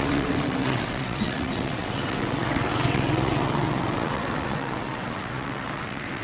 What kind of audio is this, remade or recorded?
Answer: remade